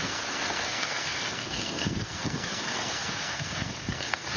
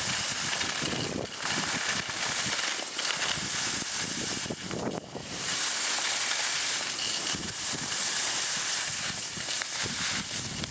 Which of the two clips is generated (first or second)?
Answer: first